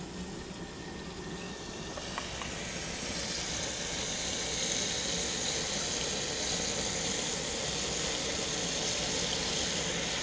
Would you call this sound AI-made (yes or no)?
no